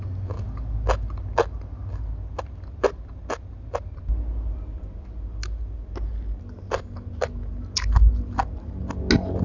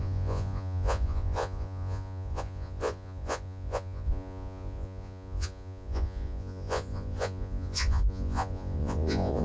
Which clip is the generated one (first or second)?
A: second